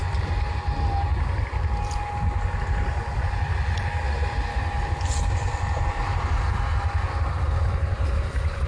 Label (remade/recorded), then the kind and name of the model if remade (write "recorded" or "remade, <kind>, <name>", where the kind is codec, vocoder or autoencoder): recorded